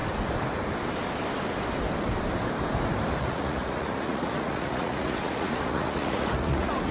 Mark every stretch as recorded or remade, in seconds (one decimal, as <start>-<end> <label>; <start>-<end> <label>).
0.0-3.2 recorded; 3.2-6.9 remade